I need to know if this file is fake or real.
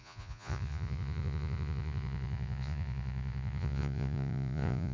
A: fake